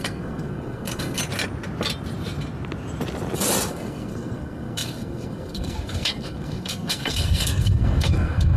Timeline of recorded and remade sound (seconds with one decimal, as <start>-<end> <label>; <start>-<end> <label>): 0.0-1.2 remade; 1.2-3.7 recorded; 3.7-8.6 remade